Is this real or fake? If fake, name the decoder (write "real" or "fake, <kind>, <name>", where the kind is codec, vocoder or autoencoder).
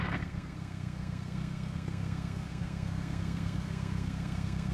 fake, codec, SNAC